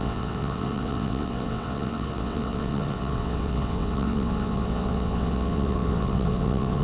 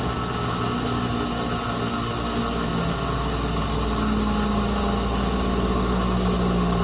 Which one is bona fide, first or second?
second